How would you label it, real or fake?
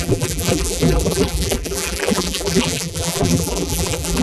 fake